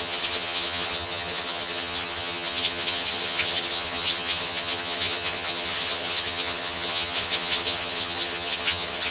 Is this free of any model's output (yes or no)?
no